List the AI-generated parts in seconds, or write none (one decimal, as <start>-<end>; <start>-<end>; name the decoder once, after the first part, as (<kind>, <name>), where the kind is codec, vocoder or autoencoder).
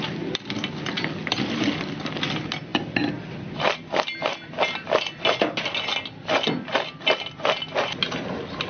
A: none